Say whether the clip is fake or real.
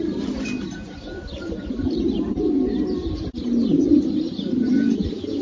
real